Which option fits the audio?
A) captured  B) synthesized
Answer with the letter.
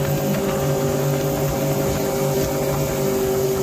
A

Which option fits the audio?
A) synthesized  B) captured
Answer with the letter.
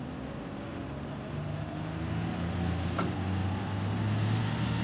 B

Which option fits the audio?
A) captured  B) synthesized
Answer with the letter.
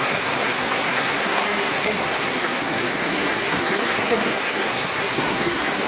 B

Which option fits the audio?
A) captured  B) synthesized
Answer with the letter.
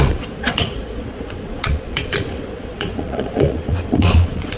B